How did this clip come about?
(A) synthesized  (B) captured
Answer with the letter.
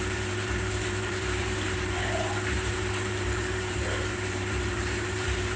A